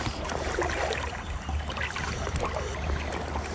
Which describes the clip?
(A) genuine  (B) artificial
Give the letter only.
B